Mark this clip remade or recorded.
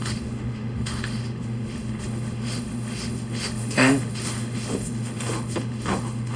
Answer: remade